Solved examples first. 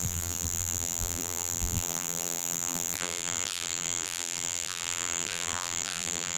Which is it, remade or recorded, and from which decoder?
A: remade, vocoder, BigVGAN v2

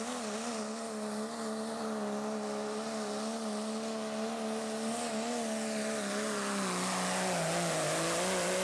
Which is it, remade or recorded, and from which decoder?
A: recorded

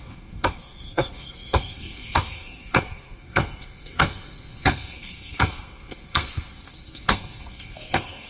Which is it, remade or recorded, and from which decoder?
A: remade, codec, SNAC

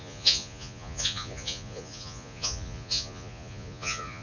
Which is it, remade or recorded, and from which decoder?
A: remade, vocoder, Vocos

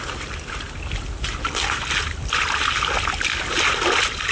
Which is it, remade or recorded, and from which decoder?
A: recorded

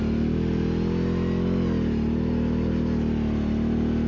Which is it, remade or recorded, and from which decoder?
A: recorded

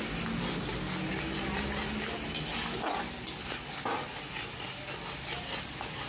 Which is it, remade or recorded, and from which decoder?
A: recorded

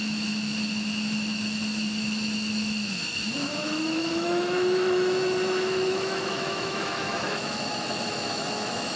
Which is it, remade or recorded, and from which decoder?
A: remade, autoencoder, DAC-VAE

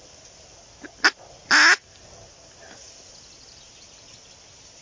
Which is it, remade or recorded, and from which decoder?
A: recorded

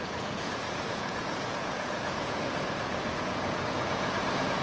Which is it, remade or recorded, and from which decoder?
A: remade, vocoder, Vocos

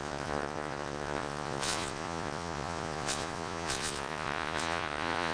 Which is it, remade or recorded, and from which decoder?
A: remade, vocoder, Vocos